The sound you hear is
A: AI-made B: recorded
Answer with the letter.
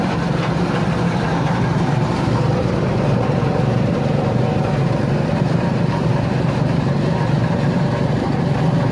A